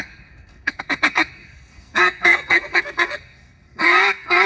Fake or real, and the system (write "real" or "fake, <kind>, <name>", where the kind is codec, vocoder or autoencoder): fake, codec, SNAC